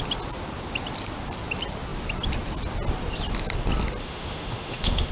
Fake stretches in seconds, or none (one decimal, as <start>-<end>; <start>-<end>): 4.0-5.1